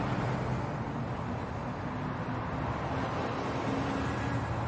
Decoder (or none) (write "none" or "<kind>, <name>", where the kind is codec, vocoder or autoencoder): none